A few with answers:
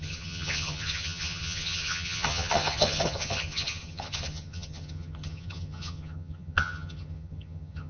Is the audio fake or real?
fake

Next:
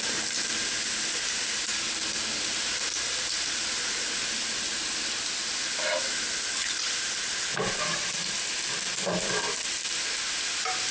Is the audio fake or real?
real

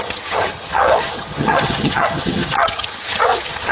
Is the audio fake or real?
fake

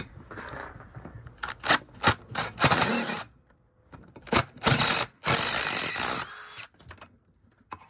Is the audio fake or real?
real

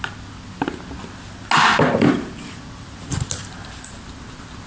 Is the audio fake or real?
real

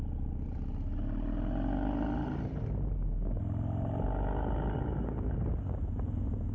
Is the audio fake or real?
real